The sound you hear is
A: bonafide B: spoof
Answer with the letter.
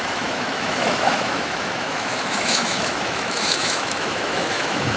B